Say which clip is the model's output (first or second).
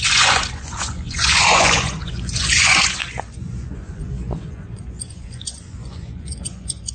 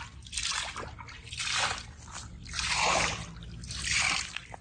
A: first